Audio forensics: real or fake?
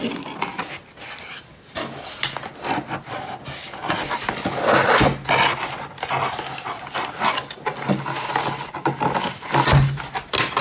real